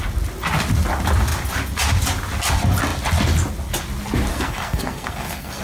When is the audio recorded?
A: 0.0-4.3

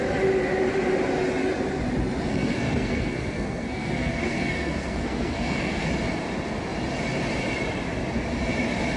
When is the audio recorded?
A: 0.0-2.3; 5.9-9.0

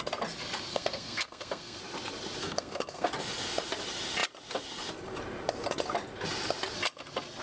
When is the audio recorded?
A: 0.0-0.7; 1.8-2.4; 3.1-7.4

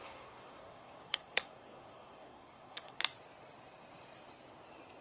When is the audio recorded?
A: 3.0-5.0

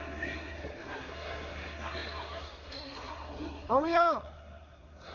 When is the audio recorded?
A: none